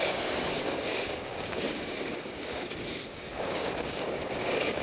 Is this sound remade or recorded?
remade